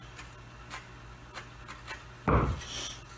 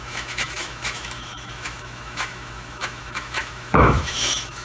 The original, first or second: first